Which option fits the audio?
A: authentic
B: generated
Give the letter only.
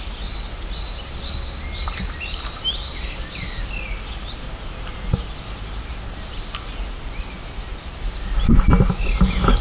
A